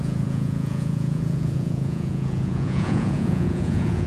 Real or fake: fake